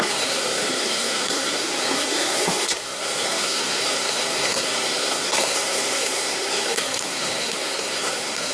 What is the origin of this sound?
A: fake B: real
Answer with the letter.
A